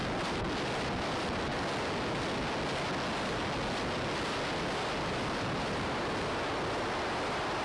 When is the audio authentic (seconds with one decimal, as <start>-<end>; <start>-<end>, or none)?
0.0-0.8; 1.5-4.0